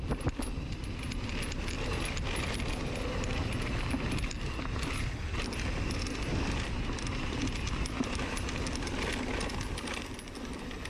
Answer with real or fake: real